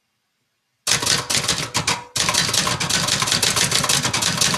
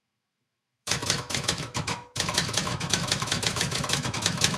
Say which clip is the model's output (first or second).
second